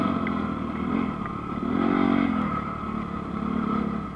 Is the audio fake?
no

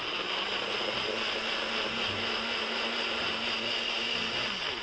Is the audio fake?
no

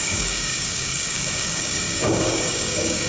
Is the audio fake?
yes